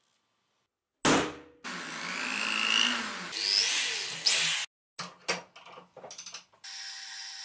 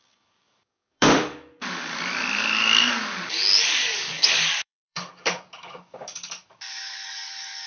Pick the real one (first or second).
first